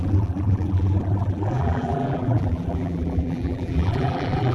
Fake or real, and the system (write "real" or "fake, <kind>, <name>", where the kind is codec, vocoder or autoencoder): fake, vocoder, BigVGAN v2